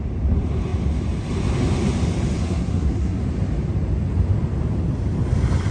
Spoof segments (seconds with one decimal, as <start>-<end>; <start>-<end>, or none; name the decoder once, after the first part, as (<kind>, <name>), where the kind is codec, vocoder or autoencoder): 2.4-3.2 (codec, SNAC)